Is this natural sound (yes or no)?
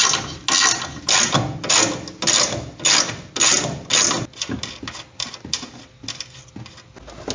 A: yes